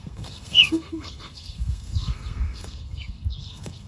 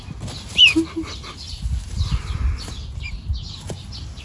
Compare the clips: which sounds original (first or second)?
second